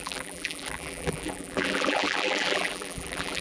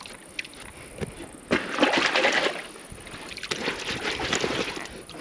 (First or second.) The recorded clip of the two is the second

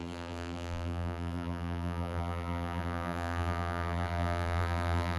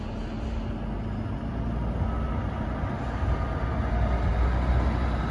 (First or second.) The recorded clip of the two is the second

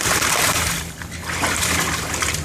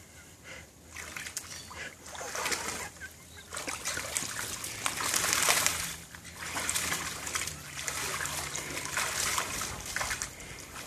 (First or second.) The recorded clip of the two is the second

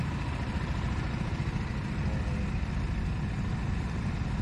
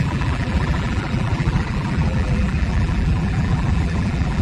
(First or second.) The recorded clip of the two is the first